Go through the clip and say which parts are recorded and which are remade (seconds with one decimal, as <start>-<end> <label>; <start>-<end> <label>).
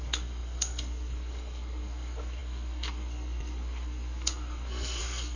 0.0-5.4 remade